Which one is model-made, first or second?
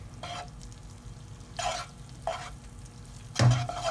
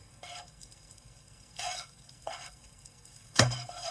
second